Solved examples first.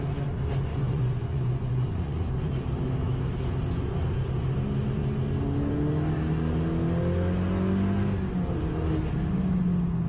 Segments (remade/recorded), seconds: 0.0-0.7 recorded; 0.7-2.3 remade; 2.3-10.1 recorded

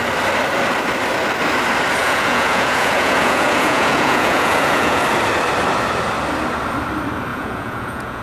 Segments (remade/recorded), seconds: 0.0-2.0 recorded; 2.0-5.0 remade; 5.0-7.3 recorded; 7.3-8.2 remade